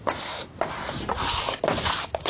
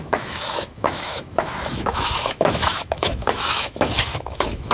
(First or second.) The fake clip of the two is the second